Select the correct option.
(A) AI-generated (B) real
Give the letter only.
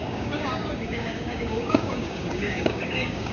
A